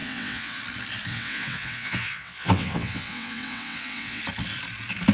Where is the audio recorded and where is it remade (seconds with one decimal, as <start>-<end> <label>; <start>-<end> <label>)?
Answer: 0.0-0.6 remade; 0.6-1.1 recorded; 1.1-4.2 remade; 4.2-5.1 recorded